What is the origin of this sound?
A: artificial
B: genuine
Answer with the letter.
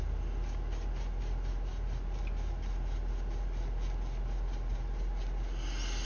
B